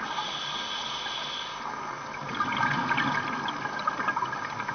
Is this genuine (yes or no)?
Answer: yes